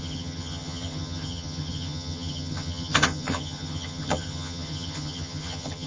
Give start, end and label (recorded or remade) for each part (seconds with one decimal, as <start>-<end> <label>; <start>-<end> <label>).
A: 0.0-5.9 remade